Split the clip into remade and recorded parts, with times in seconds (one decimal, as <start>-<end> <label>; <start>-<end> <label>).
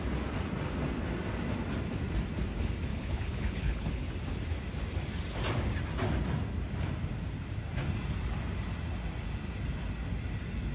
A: 0.0-2.9 recorded; 2.9-4.1 remade; 4.1-10.7 recorded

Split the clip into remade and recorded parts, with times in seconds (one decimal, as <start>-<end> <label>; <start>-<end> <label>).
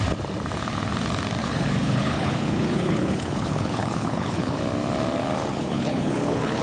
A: 0.0-1.4 recorded; 1.4-4.6 remade; 4.6-5.5 recorded; 5.5-6.6 remade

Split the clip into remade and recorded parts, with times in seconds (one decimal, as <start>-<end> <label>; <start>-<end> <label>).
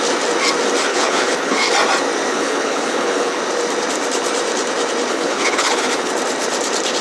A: 0.0-0.9 recorded; 0.9-1.7 remade; 1.7-2.3 recorded; 2.3-3.4 remade; 3.4-5.1 recorded; 5.1-6.1 remade; 6.1-7.0 recorded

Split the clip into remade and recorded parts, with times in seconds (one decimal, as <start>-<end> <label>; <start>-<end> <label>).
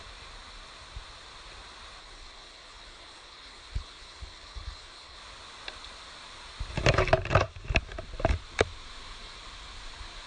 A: 0.0-2.0 recorded; 2.0-5.2 remade; 5.2-10.3 recorded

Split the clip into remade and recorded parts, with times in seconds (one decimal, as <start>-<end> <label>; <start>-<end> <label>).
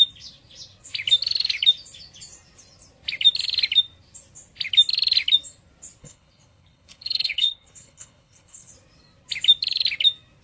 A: 0.0-6.0 recorded; 6.0-8.7 remade; 8.7-10.4 recorded